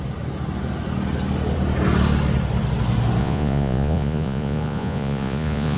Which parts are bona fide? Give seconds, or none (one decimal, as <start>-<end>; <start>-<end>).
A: 0.0-3.2